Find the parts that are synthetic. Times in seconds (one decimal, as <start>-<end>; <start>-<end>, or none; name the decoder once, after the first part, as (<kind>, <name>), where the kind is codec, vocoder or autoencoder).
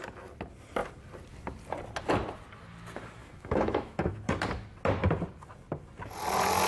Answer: 3.2-4.1 (autoencoder, DAC-VAE)